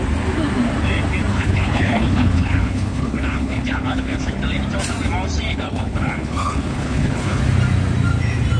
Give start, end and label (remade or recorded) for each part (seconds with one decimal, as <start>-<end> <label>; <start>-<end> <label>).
0.0-1.3 recorded; 1.3-4.4 remade; 4.4-5.5 recorded; 5.5-7.4 remade; 7.4-8.6 recorded